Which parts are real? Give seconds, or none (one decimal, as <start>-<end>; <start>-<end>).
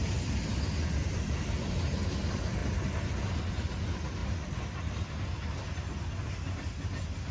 0.0-7.3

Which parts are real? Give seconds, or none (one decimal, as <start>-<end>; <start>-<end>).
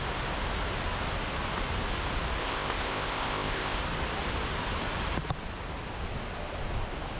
0.0-2.4; 3.8-7.2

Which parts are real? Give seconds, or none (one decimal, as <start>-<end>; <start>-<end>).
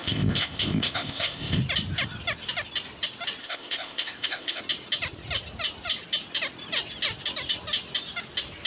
1.6-3.4; 4.6-8.7